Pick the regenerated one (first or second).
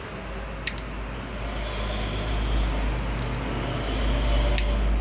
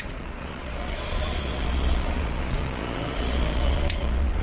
second